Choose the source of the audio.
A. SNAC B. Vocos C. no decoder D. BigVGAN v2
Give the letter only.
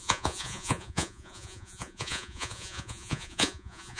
B